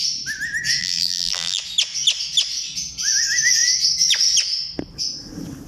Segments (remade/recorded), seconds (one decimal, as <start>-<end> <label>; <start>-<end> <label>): 0.0-0.8 recorded; 0.8-1.6 remade; 1.6-5.7 recorded